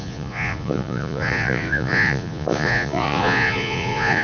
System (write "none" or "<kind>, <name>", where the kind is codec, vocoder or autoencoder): vocoder, Vocos